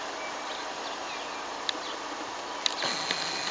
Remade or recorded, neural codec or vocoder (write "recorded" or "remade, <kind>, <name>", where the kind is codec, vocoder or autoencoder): recorded